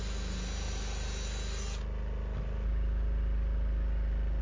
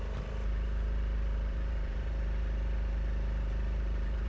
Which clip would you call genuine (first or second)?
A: first